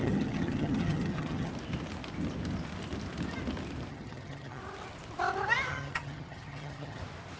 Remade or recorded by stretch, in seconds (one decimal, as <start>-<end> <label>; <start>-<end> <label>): 0.0-1.5 remade; 1.5-3.9 recorded; 3.9-4.6 remade; 4.6-5.7 recorded; 5.7-7.0 remade; 7.0-7.4 recorded